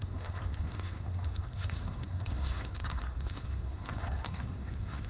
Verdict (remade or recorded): remade